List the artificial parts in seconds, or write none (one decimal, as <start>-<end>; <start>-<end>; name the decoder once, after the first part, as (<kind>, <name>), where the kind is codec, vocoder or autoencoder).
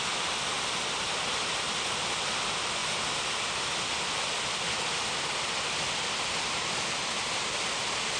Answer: none